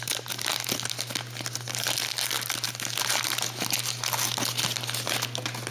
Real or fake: real